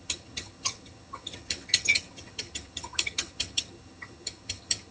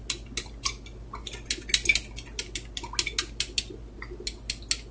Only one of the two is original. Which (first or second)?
second